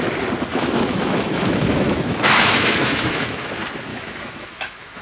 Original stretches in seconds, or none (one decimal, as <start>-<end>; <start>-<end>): 0.0-0.5; 3.5-3.9